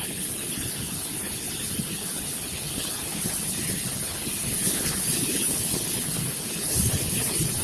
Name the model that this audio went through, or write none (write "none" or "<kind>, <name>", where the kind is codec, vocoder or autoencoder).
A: codec, HILCodec